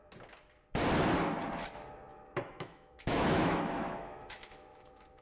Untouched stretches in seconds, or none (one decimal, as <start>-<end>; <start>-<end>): 0.0-2.1